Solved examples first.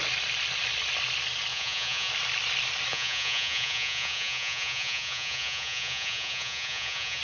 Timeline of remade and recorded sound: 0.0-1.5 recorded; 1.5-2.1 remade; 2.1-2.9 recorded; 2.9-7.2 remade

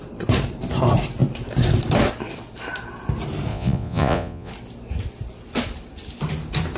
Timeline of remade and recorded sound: 0.0-3.5 recorded; 3.5-4.5 remade; 4.5-6.8 recorded

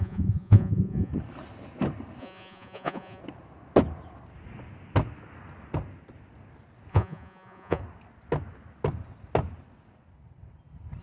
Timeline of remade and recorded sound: 0.0-1.1 remade; 1.1-2.2 recorded; 2.2-3.2 remade; 3.2-6.9 recorded; 6.9-7.8 remade; 7.8-11.0 recorded

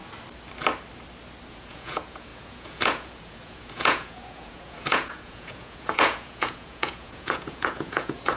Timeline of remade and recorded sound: 0.0-1.5 recorded; 1.5-8.4 remade

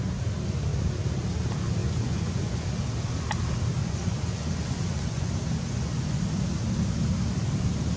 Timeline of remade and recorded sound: 0.0-1.8 recorded; 1.8-2.7 remade; 2.7-3.8 recorded; 3.8-5.3 remade; 5.3-5.7 recorded; 5.7-6.2 remade; 6.2-8.0 recorded